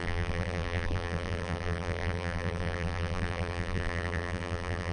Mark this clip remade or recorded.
remade